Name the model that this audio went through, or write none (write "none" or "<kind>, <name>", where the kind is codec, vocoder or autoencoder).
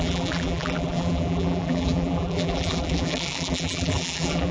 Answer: vocoder, BigVGAN v2